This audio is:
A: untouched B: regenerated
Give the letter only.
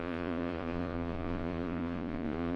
B